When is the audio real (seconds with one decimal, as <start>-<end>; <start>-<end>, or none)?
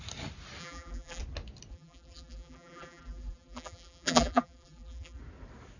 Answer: 0.0-0.6; 1.2-1.7; 5.2-5.8